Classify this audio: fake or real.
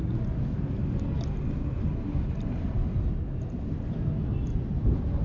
real